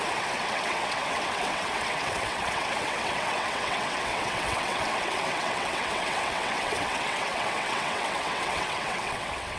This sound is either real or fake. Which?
fake